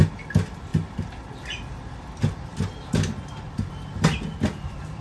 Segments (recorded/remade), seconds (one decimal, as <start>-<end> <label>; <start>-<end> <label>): 0.0-5.0 recorded